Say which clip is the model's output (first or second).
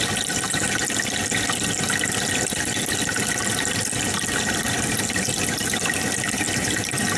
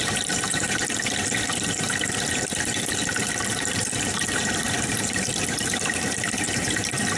second